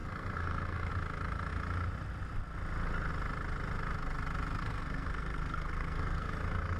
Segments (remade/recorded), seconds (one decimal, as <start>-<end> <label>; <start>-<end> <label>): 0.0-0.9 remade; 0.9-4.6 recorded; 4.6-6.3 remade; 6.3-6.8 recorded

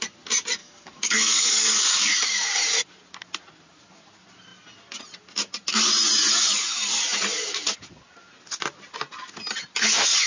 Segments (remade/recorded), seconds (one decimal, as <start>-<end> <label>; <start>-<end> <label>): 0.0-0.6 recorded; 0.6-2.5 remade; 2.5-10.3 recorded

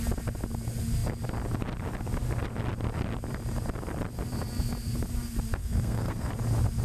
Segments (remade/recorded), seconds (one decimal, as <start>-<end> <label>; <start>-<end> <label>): 0.0-5.6 recorded; 5.6-6.3 remade; 6.3-6.8 recorded

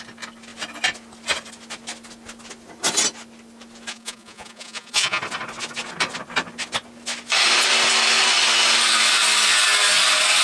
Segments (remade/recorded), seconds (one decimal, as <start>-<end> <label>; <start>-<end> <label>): 0.0-3.9 recorded; 3.9-5.2 remade; 5.2-10.4 recorded